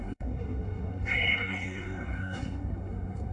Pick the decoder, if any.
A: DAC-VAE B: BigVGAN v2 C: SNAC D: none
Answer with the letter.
C